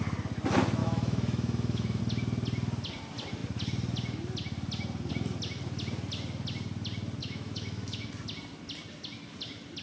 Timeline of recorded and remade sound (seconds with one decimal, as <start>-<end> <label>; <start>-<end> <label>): 0.0-0.8 recorded; 0.8-2.0 remade; 2.0-7.2 recorded; 7.2-8.1 remade; 8.1-9.8 recorded